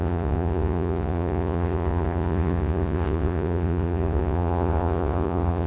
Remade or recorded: remade